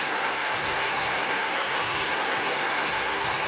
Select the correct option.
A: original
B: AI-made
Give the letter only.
B